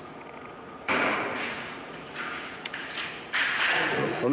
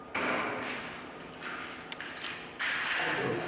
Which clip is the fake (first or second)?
first